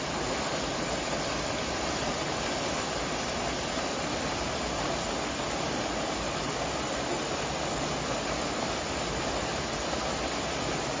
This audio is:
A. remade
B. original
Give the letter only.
B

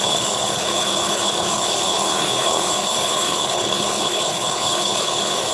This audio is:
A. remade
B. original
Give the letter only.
A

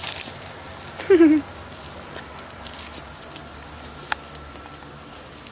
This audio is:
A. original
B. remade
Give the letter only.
A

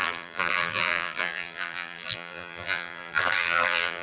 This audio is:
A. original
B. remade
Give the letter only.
B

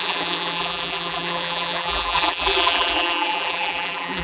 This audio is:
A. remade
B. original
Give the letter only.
A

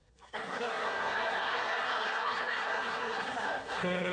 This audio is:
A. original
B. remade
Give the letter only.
B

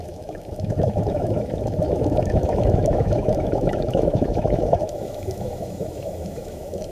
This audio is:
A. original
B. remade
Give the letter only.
B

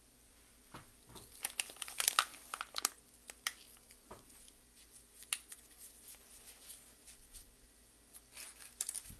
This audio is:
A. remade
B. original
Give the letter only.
B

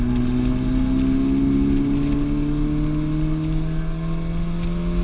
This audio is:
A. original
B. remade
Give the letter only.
A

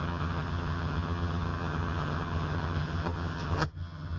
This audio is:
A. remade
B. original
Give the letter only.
A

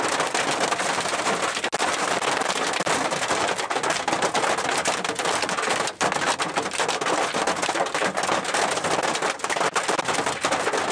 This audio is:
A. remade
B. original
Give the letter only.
B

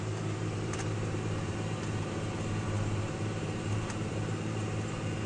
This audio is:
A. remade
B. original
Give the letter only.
A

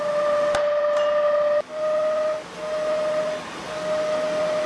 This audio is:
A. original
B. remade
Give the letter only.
A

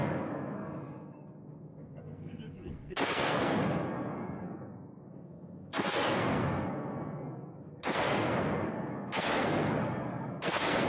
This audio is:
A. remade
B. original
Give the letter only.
A